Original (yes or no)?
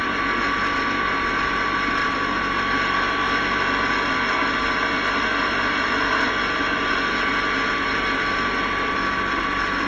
yes